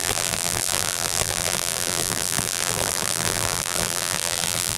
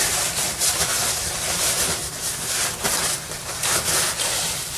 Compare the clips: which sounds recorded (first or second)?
second